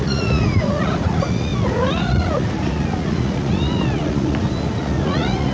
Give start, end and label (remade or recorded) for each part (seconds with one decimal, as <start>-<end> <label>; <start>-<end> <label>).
0.0-5.5 remade